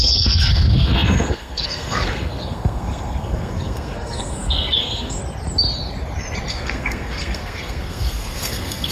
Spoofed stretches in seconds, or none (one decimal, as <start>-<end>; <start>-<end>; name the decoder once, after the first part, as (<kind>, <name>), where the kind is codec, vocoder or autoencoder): 0.0-5.2 (codec, SNAC); 6.5-8.9